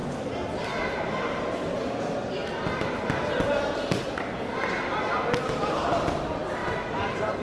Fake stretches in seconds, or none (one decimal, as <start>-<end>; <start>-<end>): none